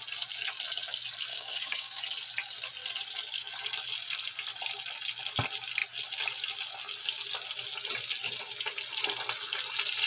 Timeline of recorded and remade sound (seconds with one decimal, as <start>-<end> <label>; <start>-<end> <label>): 0.0-1.3 recorded; 1.3-2.0 remade; 2.0-10.1 recorded